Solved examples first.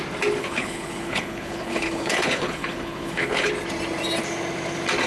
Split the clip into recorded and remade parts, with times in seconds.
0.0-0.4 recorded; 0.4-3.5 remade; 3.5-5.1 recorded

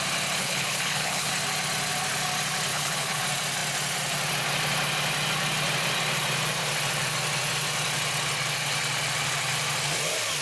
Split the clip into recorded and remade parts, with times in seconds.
0.0-0.4 recorded; 0.4-1.3 remade; 1.3-2.7 recorded; 2.7-3.2 remade; 3.2-10.4 recorded

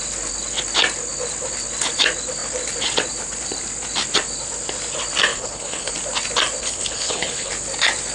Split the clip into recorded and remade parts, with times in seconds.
0.0-5.3 recorded; 5.3-5.9 remade; 5.9-6.6 recorded; 6.6-7.5 remade; 7.5-8.1 recorded

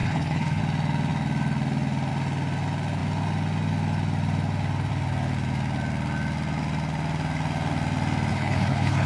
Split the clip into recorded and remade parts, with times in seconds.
0.0-0.6 remade; 0.6-8.3 recorded; 8.3-9.1 remade

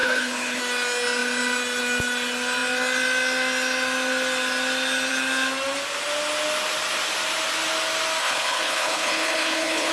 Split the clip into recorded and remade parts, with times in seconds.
0.0-0.6 remade; 0.6-8.2 recorded; 8.2-9.9 remade

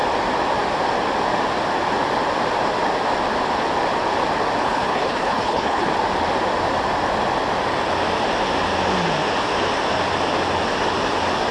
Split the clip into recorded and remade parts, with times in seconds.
0.0-4.6 recorded; 4.6-5.9 remade; 5.9-11.5 recorded

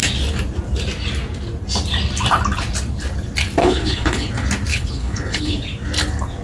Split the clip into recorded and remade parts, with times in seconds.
0.0-3.6 recorded; 3.6-4.3 remade; 4.3-4.7 recorded; 4.7-5.6 remade; 5.6-6.4 recorded